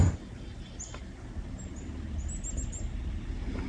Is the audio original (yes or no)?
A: yes